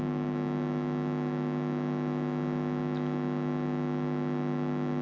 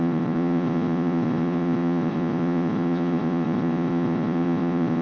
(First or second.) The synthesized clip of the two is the second